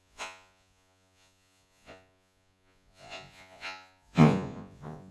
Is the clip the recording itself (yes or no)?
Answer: no